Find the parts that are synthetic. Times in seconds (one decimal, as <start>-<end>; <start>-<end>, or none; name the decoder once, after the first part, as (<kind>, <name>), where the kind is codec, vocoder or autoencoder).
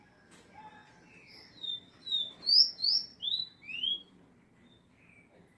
none